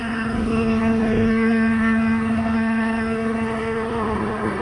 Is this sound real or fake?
fake